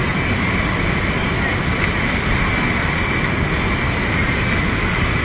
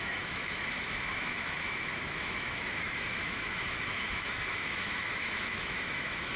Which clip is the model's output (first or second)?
second